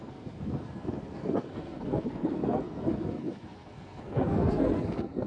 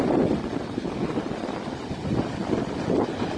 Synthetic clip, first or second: first